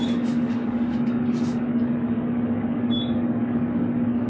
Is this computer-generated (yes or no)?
yes